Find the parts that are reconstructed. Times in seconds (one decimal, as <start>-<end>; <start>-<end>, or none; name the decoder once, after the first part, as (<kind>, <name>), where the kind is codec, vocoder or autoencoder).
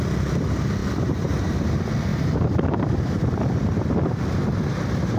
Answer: 0.8-1.7 (vocoder, BigVGAN v2); 2.1-3.4